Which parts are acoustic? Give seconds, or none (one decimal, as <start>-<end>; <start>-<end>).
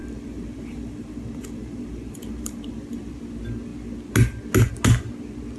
3.2-5.6